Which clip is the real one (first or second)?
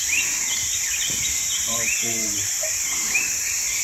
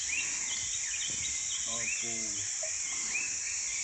second